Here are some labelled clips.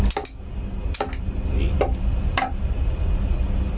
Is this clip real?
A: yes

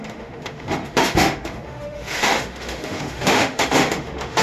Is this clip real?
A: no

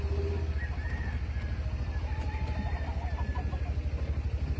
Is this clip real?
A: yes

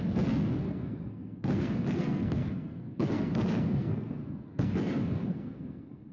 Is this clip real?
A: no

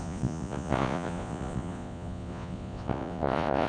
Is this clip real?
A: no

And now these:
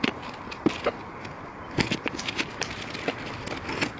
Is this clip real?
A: yes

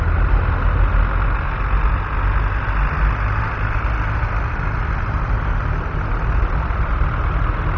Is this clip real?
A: yes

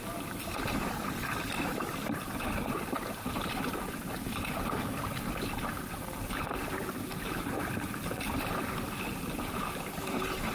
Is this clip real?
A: no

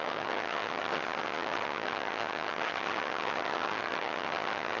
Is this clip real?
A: no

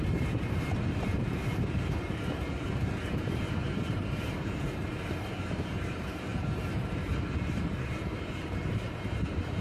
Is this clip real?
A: no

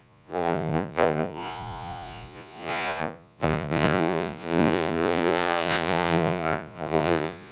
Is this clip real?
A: no